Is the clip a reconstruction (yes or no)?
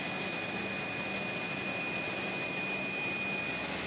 no